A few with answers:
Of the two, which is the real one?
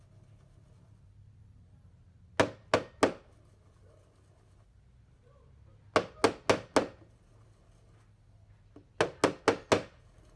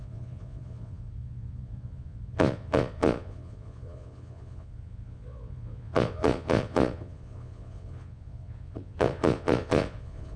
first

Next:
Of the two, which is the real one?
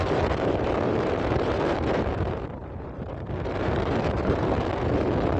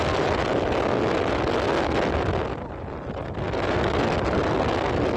second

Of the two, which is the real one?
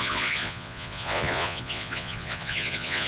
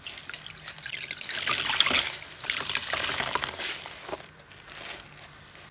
second